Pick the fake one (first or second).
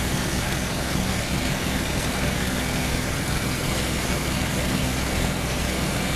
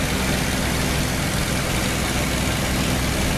first